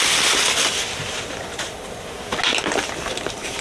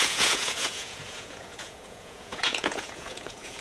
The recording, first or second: first